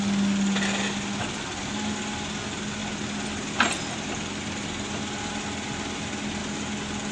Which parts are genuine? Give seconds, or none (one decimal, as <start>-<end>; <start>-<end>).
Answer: 0.0-7.1

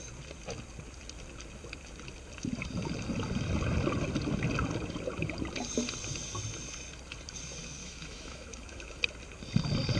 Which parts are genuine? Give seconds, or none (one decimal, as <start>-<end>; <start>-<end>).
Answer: 0.0-7.8; 9.0-10.0

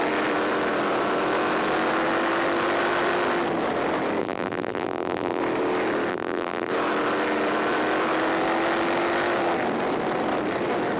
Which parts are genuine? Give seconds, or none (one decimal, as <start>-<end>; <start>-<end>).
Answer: 0.0-4.2; 5.4-6.1; 6.7-11.0

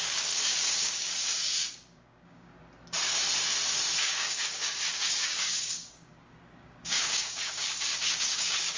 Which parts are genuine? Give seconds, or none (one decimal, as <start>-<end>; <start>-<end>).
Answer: 2.5-4.0

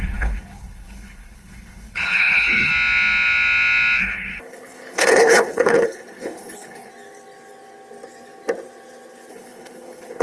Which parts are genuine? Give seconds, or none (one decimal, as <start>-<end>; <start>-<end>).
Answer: 2.7-4.0; 6.9-9.3

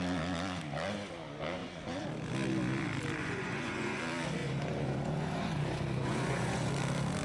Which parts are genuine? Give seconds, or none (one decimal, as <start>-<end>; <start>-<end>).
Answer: 0.0-1.6; 2.1-3.2; 4.0-4.4; 6.7-7.2